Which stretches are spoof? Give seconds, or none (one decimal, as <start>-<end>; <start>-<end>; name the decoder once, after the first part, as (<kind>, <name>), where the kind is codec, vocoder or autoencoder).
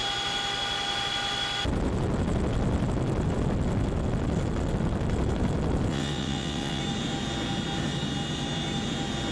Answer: 5.9-6.8 (vocoder, WaveNeXt)